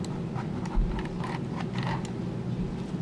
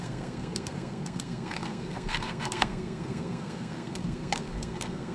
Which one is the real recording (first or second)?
first